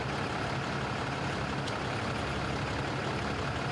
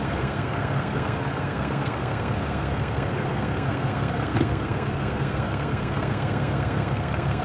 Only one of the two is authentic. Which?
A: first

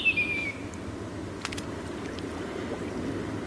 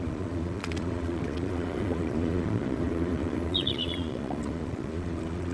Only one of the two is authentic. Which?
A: first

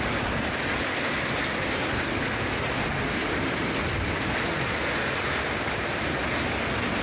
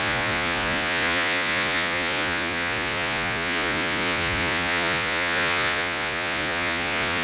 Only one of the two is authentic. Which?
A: first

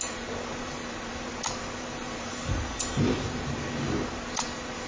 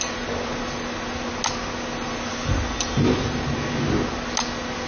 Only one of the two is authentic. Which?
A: second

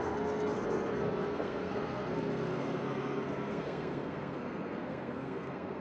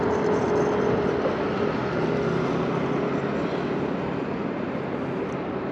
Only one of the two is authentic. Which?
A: second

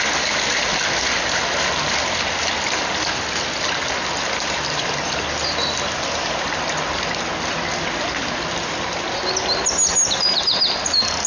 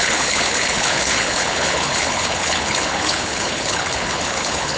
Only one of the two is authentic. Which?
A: first